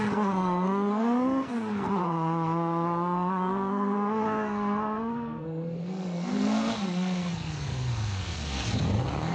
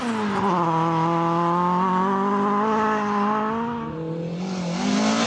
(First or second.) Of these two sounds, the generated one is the first